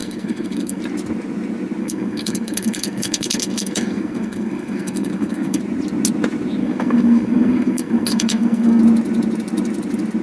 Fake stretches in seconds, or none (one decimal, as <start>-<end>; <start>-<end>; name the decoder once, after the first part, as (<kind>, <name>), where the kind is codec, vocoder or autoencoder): 0.0-0.8 (codec, SNAC); 1.8-5.6; 6.6-8.8